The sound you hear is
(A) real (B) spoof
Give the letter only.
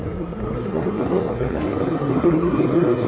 B